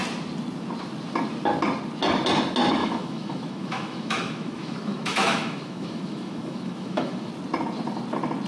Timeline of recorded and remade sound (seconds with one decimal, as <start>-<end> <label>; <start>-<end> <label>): 0.0-2.8 recorded; 2.8-7.3 remade; 7.3-8.5 recorded